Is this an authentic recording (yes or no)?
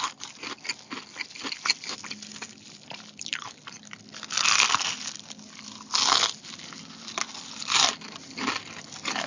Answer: yes